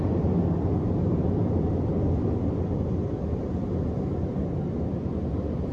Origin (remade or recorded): recorded